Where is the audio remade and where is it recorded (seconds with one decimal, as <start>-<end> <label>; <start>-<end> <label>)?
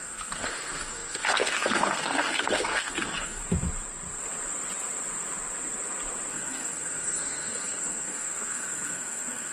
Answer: 0.0-3.4 remade; 3.4-6.3 recorded; 6.3-9.5 remade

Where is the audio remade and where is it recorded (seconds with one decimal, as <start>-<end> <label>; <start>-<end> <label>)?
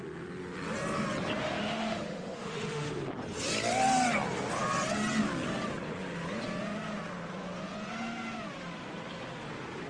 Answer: 0.0-1.4 recorded; 1.4-2.9 remade; 2.9-9.9 recorded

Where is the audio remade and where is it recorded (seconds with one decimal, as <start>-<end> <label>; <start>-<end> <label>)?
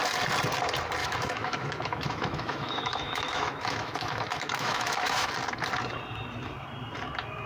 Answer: 0.0-1.0 recorded; 1.0-5.3 remade; 5.3-7.5 recorded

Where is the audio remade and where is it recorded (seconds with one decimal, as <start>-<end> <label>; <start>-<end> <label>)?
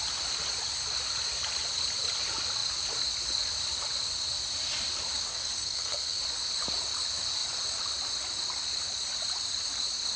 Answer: 0.0-5.3 recorded; 5.3-6.2 remade; 6.2-10.2 recorded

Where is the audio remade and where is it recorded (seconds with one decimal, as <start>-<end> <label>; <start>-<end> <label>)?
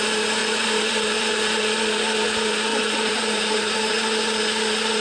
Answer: 0.0-0.4 recorded; 0.4-1.6 remade; 1.6-2.7 recorded; 2.7-4.2 remade; 4.2-5.0 recorded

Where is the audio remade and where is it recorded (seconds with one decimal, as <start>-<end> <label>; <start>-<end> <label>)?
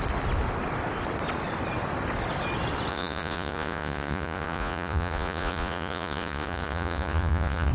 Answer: 0.0-2.9 recorded; 2.9-7.7 remade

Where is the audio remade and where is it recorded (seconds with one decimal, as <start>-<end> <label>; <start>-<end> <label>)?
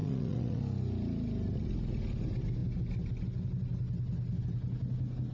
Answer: 0.0-0.6 remade; 0.6-5.3 recorded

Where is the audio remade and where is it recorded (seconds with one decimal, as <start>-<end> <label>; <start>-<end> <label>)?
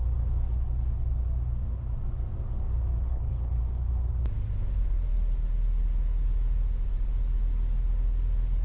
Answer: 0.0-2.9 recorded; 2.9-3.6 remade; 3.6-8.6 recorded